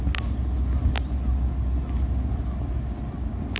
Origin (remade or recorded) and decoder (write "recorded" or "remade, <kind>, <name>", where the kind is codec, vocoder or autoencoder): recorded